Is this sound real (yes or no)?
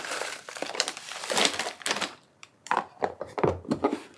no